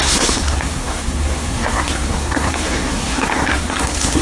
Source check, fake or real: fake